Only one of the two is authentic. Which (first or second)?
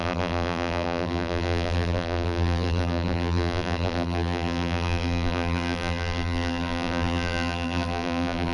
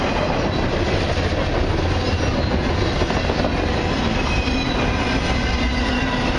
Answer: second